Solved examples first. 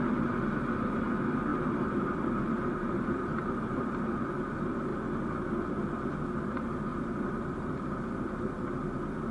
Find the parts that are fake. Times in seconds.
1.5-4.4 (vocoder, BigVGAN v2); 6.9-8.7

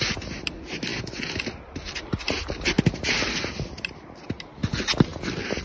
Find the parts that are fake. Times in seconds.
none

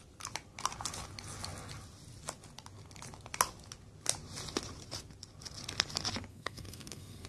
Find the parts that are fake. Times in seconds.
6.3-7.3 (codec, SNAC)

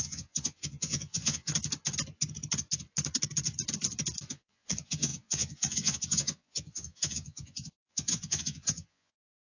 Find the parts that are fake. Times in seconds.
0.0-1.5 (vocoder, Vocos); 4.3-9.5

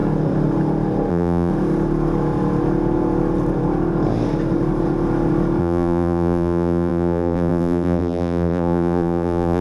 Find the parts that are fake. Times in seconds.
1.1-1.5 (vocoder, BigVGAN v2); 5.6-9.6

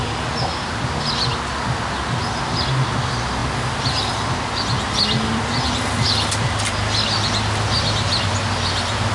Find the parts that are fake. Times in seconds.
none